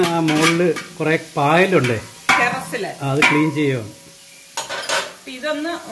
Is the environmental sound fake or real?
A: real